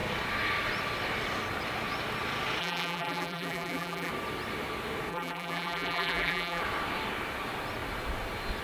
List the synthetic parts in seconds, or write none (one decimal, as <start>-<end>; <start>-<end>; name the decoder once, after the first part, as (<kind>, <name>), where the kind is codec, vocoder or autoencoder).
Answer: 2.6-4.1 (vocoder, BigVGAN v2); 5.1-6.6